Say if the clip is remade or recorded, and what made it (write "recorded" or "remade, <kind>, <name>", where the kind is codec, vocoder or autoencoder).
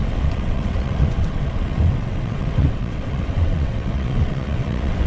remade, vocoder, WaveNeXt